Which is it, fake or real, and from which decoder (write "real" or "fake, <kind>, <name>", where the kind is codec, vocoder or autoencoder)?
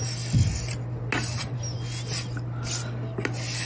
real